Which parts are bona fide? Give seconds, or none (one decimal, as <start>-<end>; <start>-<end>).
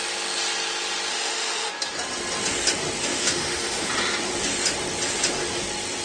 0.0-1.1; 1.7-3.1; 3.9-6.0